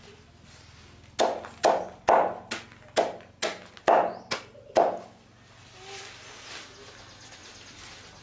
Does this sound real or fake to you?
real